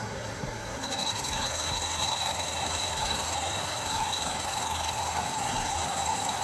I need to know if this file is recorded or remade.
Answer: remade